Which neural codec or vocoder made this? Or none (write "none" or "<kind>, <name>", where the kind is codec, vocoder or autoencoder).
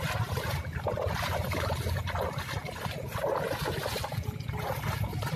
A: none